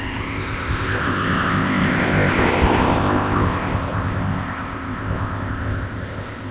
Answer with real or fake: fake